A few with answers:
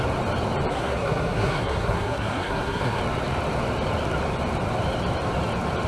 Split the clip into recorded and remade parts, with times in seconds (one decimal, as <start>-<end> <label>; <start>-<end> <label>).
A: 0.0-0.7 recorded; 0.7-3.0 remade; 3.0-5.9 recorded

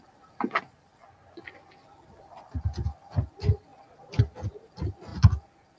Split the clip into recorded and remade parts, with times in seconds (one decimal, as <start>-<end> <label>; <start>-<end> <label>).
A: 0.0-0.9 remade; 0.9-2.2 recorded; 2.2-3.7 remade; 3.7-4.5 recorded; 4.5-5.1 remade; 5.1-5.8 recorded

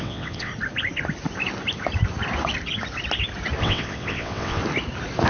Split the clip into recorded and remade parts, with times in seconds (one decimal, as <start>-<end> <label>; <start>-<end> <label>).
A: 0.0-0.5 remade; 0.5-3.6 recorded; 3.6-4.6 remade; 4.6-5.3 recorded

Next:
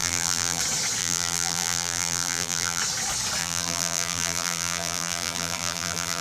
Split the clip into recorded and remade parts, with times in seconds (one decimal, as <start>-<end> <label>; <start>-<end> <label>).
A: 0.0-0.6 remade; 0.6-1.0 recorded; 1.0-2.8 remade; 2.8-3.4 recorded; 3.4-6.2 remade